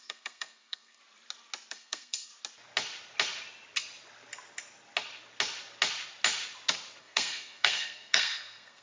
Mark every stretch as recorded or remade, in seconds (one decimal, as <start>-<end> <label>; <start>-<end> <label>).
0.0-1.0 remade; 1.0-1.7 recorded; 1.7-2.3 remade; 2.3-7.0 recorded; 7.0-8.8 remade